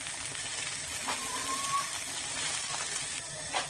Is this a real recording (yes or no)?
yes